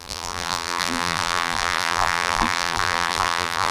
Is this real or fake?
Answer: fake